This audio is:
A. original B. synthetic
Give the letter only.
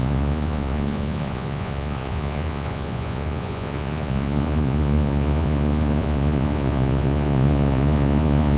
B